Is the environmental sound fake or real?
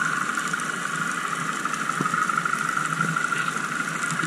real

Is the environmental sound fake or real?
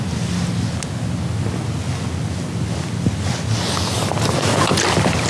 real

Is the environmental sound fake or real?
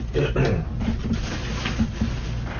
real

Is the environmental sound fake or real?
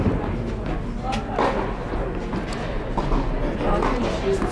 real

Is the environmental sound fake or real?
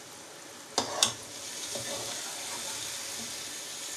real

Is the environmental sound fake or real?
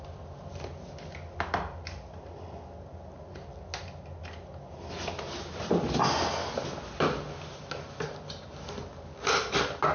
real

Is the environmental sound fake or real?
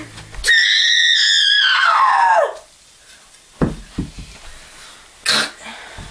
real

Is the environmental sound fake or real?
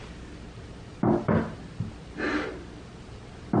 real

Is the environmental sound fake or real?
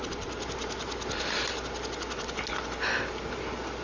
real